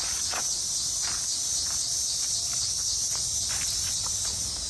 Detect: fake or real real